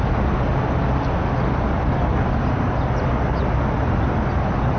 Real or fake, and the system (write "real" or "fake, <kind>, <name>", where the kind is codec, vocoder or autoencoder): real